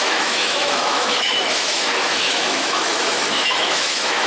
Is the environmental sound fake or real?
fake